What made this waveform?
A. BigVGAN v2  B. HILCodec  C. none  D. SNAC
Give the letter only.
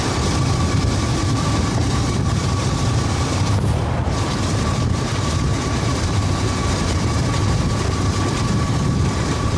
A